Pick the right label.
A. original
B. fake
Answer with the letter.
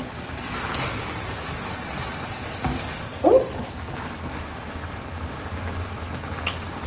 A